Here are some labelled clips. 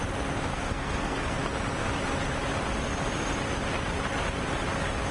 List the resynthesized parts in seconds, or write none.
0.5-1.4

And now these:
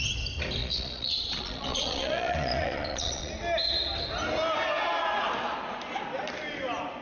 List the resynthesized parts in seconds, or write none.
0.6-3.3

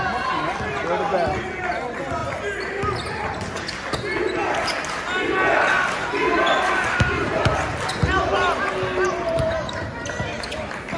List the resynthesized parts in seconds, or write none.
none

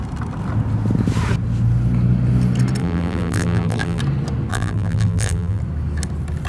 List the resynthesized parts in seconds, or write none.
2.8-4.0; 4.5-5.6

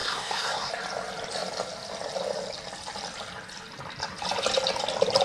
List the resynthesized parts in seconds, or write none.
0.0-0.7

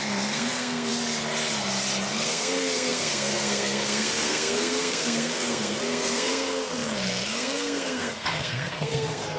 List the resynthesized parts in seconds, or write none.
0.0-0.9; 2.1-9.4

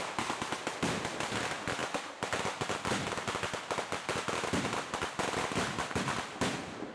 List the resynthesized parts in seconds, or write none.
none

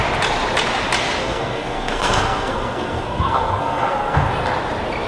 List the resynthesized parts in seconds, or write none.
1.2-4.3